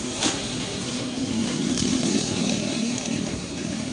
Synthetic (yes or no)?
yes